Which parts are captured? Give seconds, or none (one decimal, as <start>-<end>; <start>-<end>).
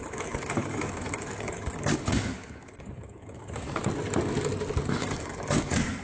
3.8-4.9